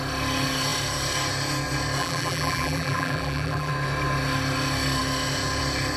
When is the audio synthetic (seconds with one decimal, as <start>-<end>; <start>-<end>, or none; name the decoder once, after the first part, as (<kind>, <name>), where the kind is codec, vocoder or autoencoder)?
2.0-3.7 (vocoder, BigVGAN v2)